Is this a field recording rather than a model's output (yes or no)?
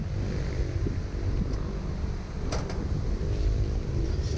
no